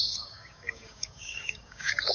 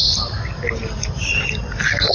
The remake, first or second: first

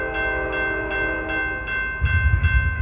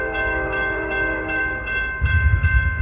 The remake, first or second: second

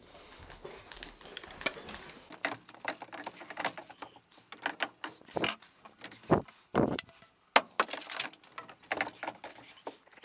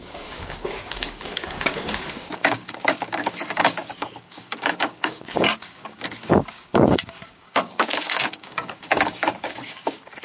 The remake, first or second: second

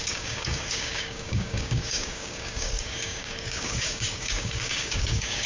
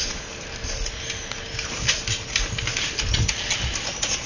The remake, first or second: first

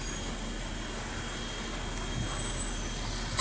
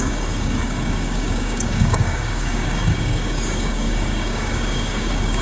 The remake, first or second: second